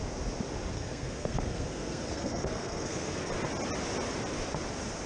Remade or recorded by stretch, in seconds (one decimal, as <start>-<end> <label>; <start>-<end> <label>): 0.0-0.7 recorded; 0.7-3.3 remade; 3.3-5.1 recorded